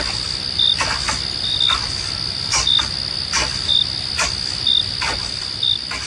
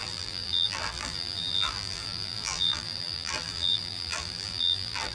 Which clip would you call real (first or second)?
first